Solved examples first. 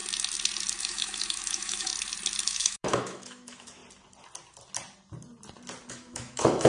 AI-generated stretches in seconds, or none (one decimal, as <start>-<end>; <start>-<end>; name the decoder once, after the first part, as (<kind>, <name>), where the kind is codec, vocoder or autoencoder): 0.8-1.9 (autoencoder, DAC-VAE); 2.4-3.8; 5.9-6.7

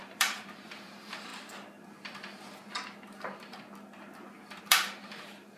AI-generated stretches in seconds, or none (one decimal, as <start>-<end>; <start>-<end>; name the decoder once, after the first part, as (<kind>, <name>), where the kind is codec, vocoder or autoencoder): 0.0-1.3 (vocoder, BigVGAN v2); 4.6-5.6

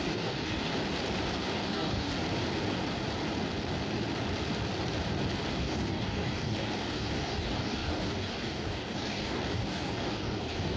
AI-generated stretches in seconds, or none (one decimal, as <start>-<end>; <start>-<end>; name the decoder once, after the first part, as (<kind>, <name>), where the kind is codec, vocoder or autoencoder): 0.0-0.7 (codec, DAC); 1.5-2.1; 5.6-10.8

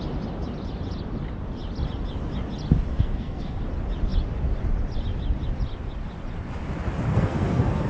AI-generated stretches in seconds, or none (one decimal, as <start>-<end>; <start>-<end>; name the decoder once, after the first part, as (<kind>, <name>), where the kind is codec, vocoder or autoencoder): 2.9-3.6 (codec, SNAC); 7.1-7.9